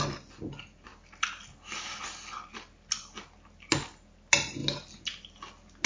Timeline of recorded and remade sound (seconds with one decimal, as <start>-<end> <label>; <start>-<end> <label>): 0.0-5.9 recorded